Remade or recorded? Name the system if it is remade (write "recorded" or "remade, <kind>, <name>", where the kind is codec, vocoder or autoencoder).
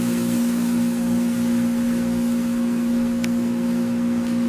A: remade, codec, SNAC